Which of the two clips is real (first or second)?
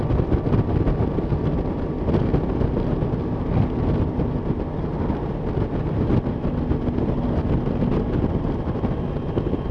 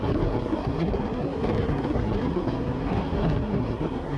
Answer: first